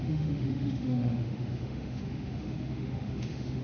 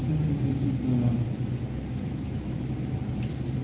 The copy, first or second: first